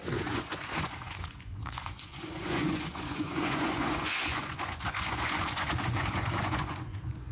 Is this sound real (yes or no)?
no